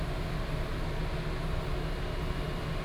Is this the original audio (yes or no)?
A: yes